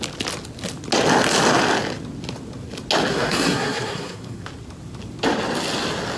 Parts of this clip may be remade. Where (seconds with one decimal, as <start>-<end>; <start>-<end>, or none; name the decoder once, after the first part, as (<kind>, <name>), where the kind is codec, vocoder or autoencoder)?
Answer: 3.1-4.4 (codec, SNAC)